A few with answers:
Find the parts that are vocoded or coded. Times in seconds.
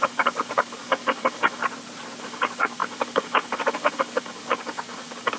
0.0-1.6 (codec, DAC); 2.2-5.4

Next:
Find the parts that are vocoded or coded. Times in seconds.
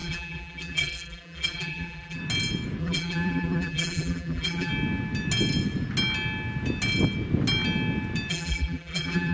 0.0-2.2 (vocoder, BigVGAN v2); 2.8-4.7; 8.3-9.3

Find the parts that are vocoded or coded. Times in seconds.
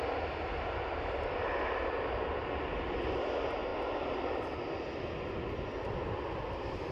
2.4-3.0 (vocoder, BigVGAN v2)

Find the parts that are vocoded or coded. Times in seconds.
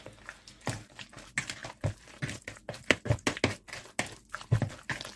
none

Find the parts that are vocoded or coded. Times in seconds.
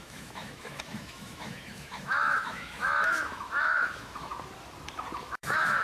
0.0-4.3 (autoencoder, DAC-VAE); 5.2-5.8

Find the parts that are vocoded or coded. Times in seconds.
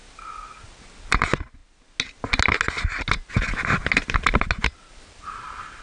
none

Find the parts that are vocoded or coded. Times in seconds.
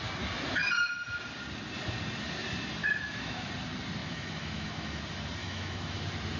2.8-3.5 (autoencoder, DAC-VAE); 4.0-5.0; 5.4-6.0